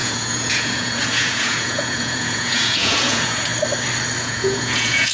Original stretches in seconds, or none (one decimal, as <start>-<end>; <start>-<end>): 3.5-4.2